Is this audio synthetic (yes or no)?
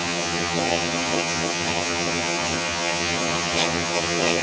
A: yes